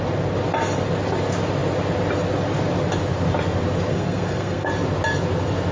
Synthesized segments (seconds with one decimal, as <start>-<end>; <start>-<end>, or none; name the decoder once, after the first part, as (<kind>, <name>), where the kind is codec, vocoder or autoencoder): 3.9-4.7 (codec, SNAC)